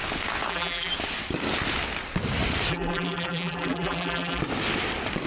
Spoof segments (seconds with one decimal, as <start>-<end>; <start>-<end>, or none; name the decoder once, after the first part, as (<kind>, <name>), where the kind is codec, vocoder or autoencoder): 0.5-0.9 (vocoder, BigVGAN v2); 2.7-4.4